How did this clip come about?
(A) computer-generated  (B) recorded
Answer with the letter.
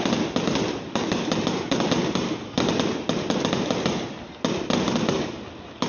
B